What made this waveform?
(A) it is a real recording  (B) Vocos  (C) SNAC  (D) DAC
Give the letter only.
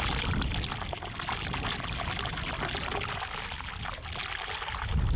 A